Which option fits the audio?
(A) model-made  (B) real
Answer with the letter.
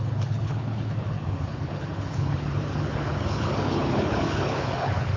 A